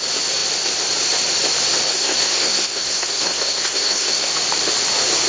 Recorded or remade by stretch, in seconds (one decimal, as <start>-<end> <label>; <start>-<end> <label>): 0.0-1.9 recorded; 1.9-4.3 remade; 4.3-5.3 recorded